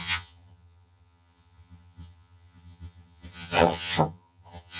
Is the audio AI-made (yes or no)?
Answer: yes